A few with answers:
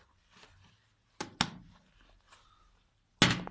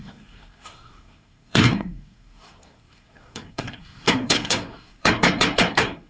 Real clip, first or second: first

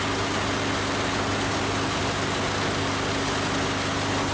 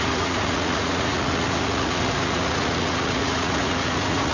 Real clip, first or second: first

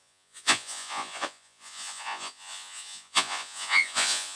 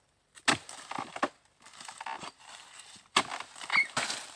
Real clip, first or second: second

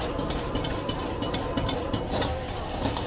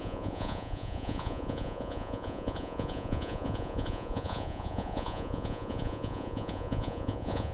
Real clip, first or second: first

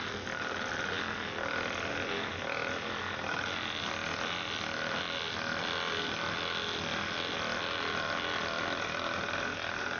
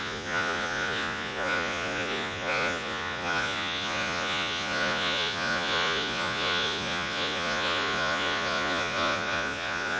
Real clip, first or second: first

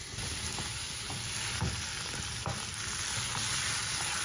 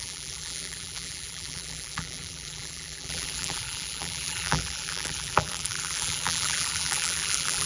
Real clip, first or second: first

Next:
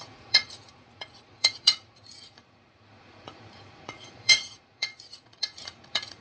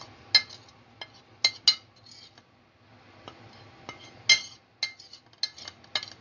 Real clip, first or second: second